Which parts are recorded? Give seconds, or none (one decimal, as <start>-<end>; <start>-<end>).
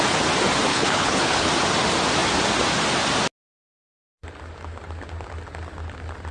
0.0-0.7; 1.5-6.3